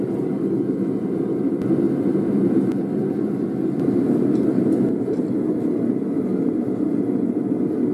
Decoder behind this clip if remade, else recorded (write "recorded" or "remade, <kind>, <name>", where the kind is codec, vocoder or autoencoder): recorded